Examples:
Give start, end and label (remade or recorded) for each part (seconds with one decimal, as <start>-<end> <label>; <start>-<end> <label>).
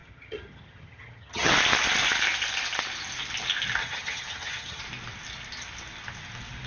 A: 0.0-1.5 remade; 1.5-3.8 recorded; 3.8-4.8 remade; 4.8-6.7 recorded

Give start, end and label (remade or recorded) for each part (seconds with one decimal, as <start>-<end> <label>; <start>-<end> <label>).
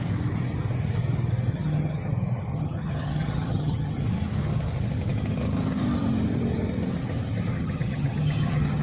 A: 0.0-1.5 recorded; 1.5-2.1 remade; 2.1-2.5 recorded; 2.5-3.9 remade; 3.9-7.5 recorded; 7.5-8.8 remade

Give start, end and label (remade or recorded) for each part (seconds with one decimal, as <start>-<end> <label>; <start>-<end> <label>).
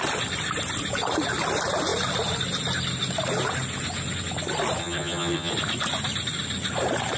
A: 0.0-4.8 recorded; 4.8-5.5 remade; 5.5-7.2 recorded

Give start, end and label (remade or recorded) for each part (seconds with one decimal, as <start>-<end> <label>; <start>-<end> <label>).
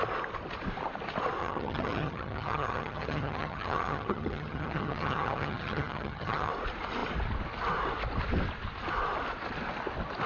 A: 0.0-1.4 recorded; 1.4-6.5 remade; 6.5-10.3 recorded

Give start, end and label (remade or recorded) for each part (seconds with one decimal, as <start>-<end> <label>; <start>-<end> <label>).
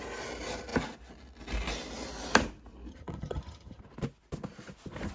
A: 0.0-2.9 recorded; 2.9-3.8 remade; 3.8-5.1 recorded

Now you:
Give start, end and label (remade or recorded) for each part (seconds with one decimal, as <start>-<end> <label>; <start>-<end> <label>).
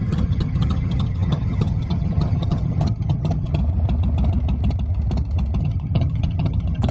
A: 0.0-3.6 remade; 3.6-5.6 recorded; 5.6-6.9 remade